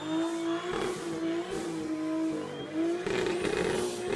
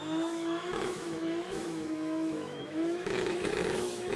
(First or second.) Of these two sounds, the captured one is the first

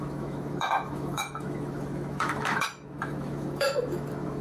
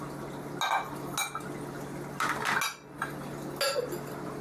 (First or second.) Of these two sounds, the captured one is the second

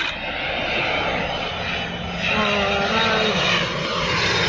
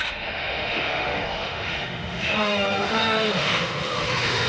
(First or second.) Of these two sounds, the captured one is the first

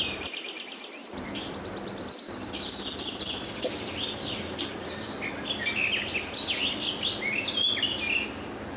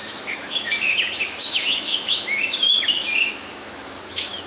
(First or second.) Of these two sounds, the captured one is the first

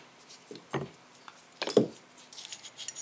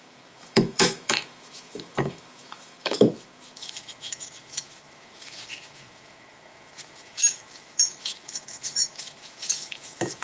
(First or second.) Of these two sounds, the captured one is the first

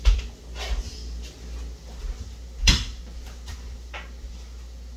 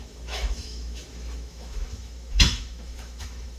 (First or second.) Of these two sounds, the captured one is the first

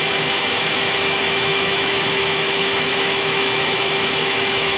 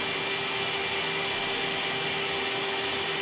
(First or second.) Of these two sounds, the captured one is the second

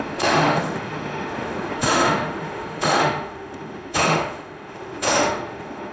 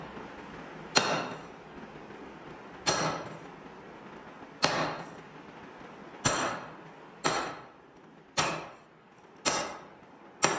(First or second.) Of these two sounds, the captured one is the second